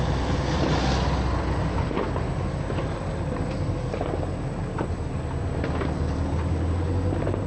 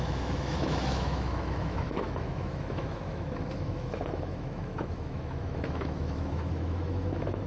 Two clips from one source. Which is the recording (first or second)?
first